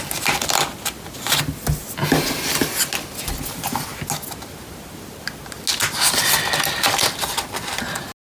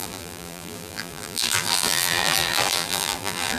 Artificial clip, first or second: second